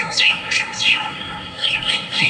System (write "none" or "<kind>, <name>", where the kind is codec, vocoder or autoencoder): codec, SNAC